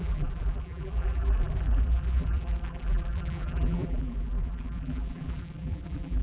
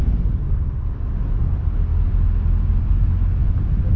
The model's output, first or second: first